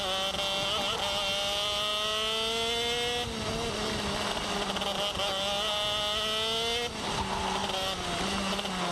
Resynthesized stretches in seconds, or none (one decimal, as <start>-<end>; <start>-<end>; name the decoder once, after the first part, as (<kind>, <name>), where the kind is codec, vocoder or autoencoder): none